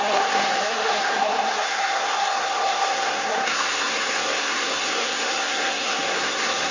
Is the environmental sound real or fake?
fake